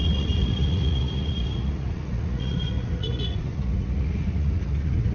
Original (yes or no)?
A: no